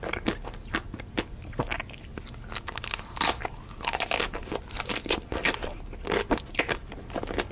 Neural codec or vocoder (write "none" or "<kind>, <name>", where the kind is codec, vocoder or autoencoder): none